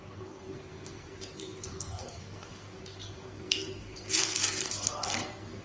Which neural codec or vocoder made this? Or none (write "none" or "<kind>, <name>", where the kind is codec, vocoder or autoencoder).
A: codec, SNAC